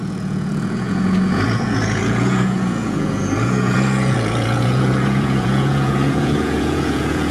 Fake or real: fake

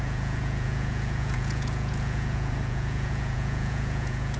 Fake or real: fake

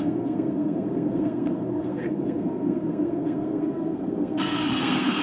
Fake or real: fake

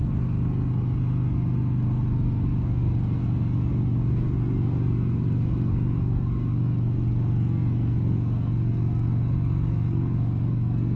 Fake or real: fake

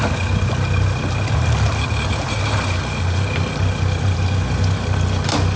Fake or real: real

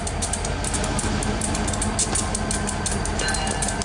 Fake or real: real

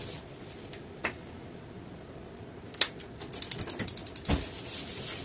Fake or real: real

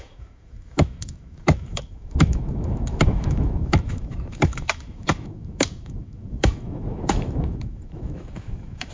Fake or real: fake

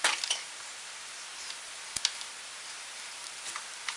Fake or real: fake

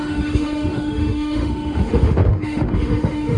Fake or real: fake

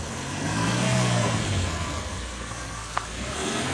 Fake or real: fake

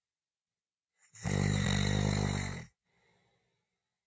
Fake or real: real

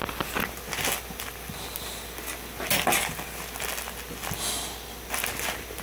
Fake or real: real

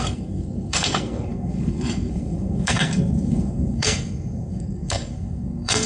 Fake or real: fake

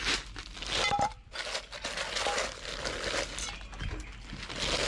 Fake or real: real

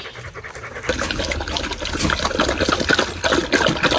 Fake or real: real